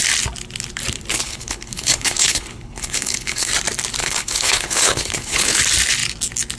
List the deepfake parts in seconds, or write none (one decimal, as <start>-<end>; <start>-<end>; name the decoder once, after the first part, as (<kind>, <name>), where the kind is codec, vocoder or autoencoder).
1.1-3.5 (codec, HILCodec); 4.0-5.6